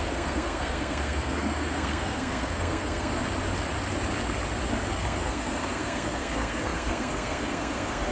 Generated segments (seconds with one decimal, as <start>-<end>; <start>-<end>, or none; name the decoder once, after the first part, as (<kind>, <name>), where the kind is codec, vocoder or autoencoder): 0.0-3.2 (codec, SNAC); 4.9-8.1